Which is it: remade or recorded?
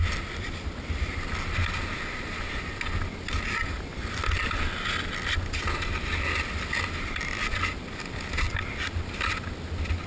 recorded